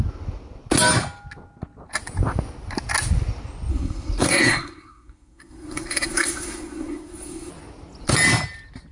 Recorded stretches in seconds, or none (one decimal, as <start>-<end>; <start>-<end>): 0.0-3.7; 7.5-8.9